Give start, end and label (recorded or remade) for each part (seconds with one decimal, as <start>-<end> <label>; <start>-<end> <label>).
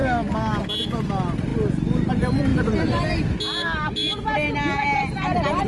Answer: 0.0-5.7 recorded